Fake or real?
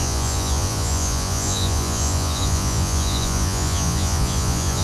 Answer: fake